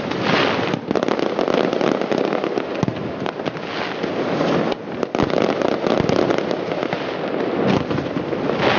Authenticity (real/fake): real